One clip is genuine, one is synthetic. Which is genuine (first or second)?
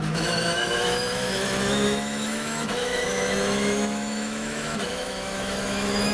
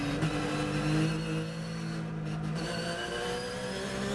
second